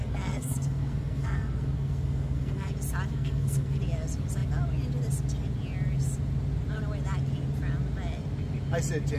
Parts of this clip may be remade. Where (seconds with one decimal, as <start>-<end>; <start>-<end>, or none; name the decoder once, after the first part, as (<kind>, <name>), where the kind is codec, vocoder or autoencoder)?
0.0-2.7 (codec, SNAC); 3.1-3.8